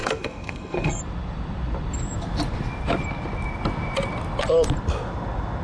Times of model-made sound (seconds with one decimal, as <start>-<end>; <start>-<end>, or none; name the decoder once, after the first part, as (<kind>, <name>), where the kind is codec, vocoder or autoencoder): 0.0-1.0 (codec, SNAC)

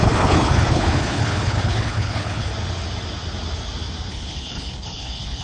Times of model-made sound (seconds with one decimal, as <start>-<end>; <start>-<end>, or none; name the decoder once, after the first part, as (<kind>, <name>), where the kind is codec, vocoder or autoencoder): 0.0-2.5 (codec, HILCodec); 4.1-5.4

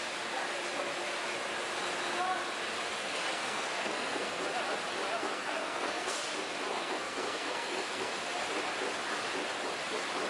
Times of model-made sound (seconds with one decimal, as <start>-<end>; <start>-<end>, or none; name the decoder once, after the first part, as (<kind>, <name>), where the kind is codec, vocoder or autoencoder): 3.0-4.4 (codec, SNAC); 5.2-6.2; 6.7-8.4

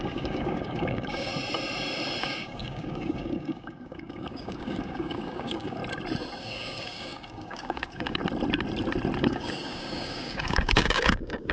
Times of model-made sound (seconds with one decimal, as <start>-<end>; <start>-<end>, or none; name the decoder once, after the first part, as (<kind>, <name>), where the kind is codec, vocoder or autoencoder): 0.0-1.3 (codec, DAC); 2.2-5.8; 6.4-8.2; 9.2-11.5

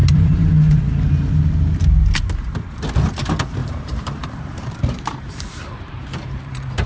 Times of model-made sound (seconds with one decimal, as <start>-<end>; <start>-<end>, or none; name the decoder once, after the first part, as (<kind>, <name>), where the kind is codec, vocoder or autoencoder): 0.0-0.8 (vocoder, BigVGAN v2); 3.6-6.9

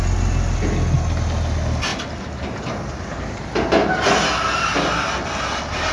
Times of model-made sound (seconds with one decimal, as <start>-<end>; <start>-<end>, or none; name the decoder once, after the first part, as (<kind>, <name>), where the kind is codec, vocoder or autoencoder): none

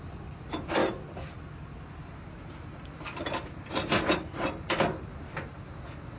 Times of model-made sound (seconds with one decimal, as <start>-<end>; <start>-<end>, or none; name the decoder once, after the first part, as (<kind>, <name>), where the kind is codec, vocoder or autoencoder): none

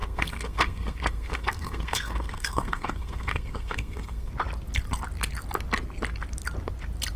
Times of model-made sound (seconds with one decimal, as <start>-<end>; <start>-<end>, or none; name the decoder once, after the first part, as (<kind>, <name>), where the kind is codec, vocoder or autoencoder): 0.0-4.3 (codec, SNAC)